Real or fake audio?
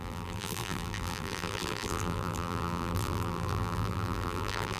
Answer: fake